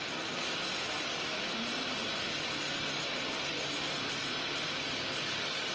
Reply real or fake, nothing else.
real